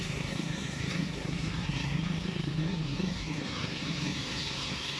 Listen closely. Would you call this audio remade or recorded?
remade